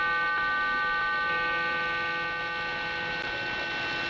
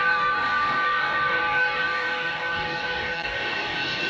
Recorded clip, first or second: first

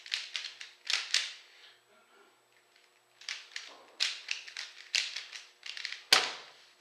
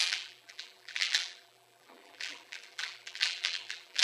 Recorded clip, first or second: first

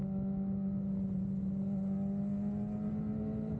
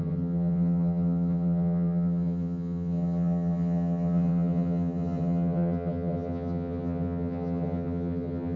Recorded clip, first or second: first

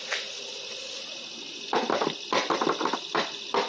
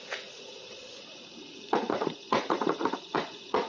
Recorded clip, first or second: first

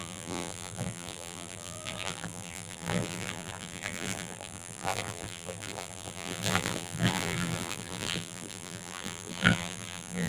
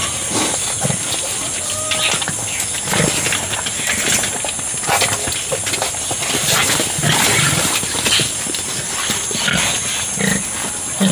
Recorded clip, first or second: second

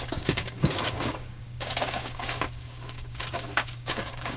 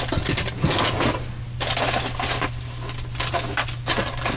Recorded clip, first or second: second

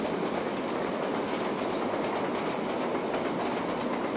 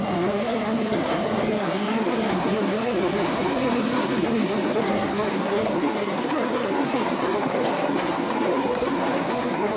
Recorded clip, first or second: first